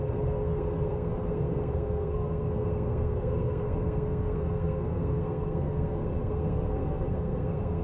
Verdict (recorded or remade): remade